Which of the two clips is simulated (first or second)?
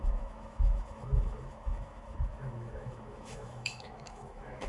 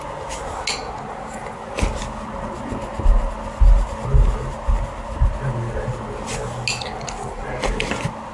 first